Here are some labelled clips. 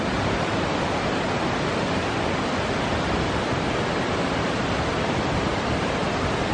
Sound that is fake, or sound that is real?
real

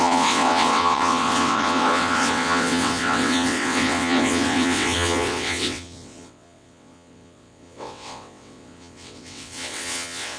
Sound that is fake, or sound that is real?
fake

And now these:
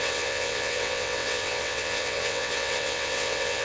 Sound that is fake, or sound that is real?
fake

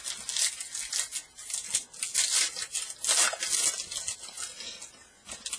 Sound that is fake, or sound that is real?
real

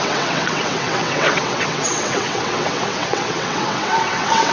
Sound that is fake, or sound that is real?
fake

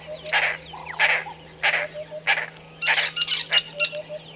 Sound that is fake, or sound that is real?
real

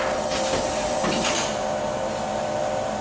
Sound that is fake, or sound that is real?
real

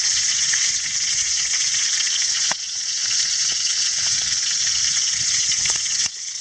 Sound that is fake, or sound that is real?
fake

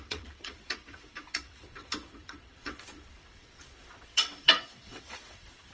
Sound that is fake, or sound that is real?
fake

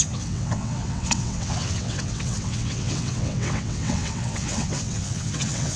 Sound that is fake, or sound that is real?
fake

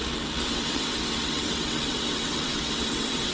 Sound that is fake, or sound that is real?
fake